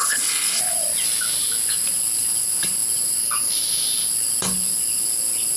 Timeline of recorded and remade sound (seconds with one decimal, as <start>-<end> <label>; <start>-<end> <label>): 0.0-0.6 remade; 0.6-5.6 recorded